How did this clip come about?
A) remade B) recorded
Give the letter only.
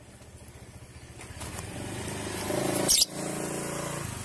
B